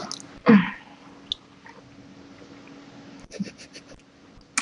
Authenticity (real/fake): real